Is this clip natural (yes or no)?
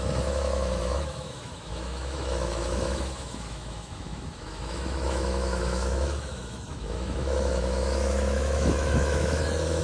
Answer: no